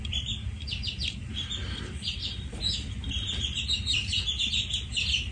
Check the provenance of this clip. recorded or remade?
recorded